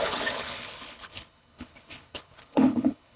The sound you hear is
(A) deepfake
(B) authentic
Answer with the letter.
A